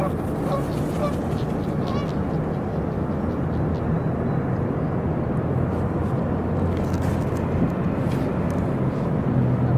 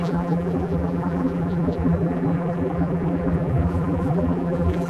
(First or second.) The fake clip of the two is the second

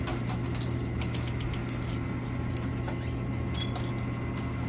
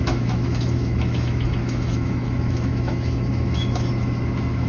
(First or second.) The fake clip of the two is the second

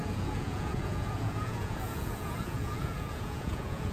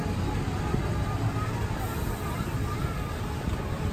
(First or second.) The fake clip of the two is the first